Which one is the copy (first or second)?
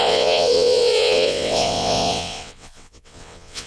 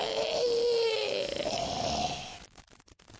first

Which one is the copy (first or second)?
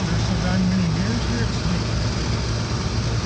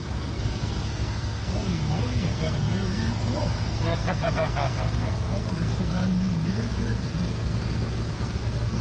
second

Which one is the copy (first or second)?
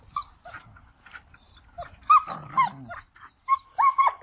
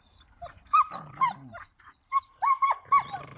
second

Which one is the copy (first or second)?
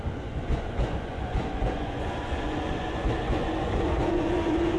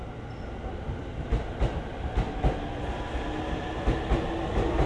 first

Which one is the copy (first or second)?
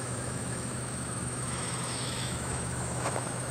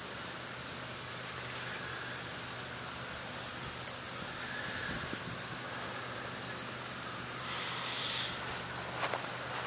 first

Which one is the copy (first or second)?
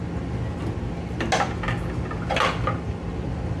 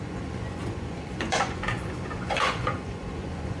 second